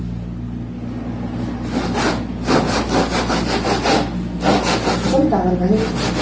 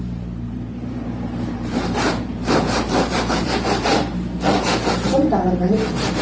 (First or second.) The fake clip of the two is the second